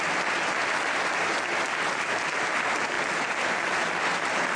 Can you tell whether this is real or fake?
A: real